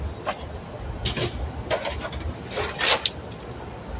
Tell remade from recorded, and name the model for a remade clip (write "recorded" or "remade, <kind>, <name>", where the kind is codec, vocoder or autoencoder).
recorded